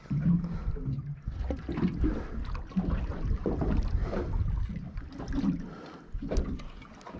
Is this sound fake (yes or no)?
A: no